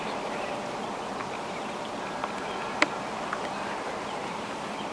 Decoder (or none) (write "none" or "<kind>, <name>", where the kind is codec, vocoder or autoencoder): none